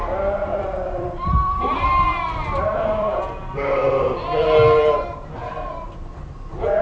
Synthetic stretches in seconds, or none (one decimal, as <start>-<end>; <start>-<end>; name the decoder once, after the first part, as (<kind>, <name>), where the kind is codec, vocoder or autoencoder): 0.5-3.2 (vocoder, BigVGAN v2)